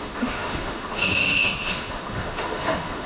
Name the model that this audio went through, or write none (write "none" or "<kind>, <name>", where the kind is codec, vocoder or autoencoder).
autoencoder, DAC-VAE